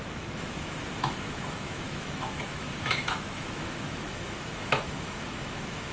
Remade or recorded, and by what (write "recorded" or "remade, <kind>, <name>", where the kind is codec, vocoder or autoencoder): remade, autoencoder, DAC-VAE